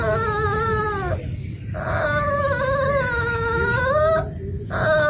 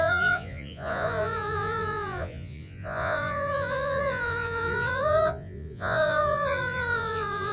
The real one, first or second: first